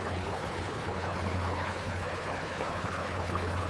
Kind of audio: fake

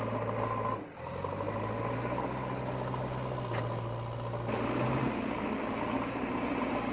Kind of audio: real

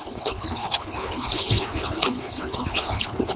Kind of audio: fake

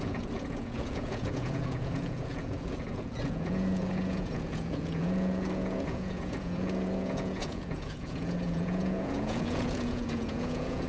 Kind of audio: fake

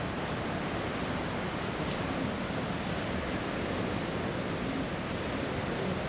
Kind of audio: real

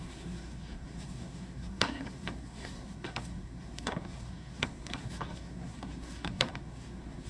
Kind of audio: fake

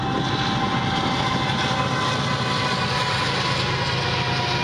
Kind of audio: real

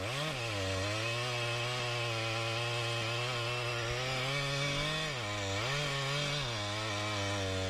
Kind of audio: real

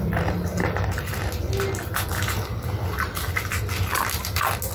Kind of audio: real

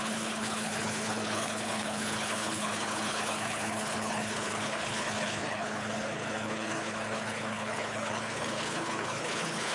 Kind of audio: fake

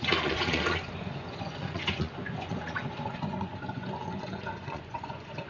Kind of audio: fake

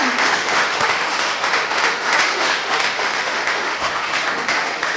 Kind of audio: fake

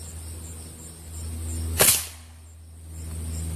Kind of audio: fake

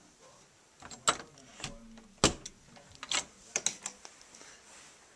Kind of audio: real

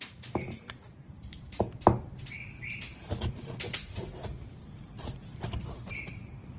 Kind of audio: fake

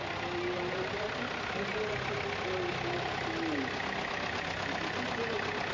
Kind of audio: real